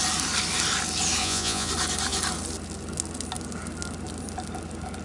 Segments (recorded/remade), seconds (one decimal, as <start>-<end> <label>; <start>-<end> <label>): 0.0-1.2 recorded; 1.2-1.7 remade; 1.7-5.0 recorded